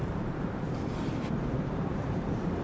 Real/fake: fake